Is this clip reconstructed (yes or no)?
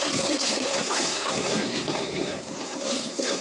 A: yes